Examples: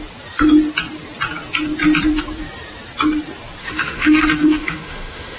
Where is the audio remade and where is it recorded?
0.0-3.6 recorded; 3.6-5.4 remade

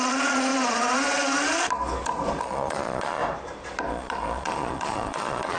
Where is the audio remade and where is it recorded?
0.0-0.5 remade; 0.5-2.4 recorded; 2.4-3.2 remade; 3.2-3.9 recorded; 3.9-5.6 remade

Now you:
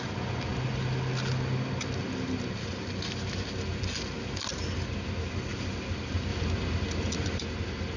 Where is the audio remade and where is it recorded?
0.0-8.0 recorded

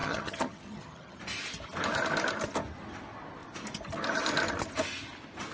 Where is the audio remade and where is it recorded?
0.0-1.2 remade; 1.2-5.5 recorded